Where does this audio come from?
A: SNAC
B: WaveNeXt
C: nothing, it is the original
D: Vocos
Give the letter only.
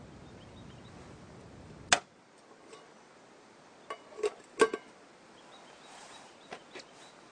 C